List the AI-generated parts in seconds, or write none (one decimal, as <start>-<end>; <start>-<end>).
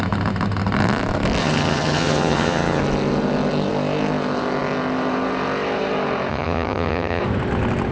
1.4-2.8; 6.3-7.2